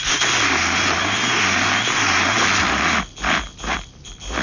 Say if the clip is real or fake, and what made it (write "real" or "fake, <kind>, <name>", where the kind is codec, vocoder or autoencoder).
real